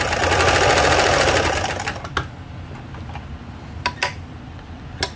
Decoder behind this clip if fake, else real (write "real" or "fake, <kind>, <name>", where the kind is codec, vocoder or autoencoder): real